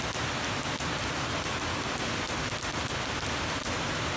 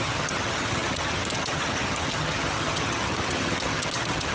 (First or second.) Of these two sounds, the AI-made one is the second